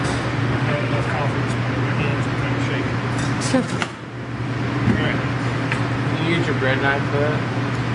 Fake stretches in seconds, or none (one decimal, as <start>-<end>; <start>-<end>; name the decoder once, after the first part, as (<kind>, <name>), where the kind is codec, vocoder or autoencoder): 0.4-1.1 (autoencoder, DAC-VAE)